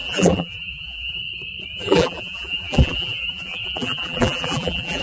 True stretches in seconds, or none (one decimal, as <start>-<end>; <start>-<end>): 1.2-1.7